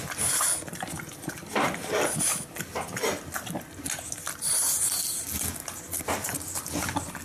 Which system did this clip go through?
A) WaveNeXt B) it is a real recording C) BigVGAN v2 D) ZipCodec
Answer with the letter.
B